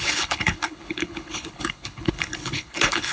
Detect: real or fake fake